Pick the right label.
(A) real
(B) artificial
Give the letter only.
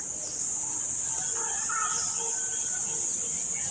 A